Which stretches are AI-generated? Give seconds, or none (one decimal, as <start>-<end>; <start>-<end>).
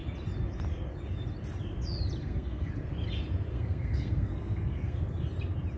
2.2-2.7; 3.5-5.0